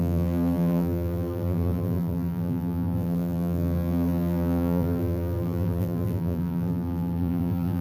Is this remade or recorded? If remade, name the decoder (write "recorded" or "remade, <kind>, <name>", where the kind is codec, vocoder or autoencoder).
remade, vocoder, BigVGAN v2